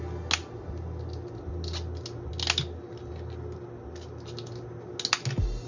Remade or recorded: recorded